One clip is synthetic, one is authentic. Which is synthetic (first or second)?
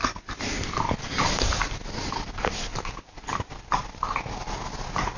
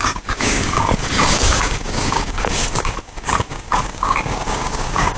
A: second